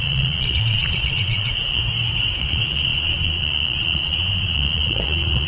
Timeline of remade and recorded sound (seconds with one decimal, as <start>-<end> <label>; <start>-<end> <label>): 0.0-1.8 remade; 1.8-2.4 recorded; 2.4-5.5 remade